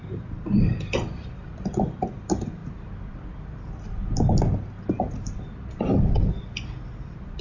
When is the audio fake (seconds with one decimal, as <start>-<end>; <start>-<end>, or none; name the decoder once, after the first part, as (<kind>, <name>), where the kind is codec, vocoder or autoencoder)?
0.0-2.6 (vocoder, BigVGAN v2); 7.0-7.4